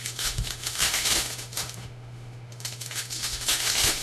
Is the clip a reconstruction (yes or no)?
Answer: yes